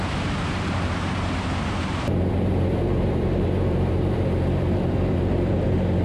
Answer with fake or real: fake